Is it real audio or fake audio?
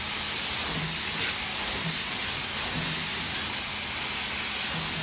real